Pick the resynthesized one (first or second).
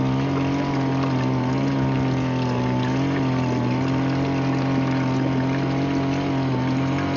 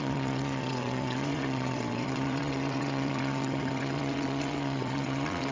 second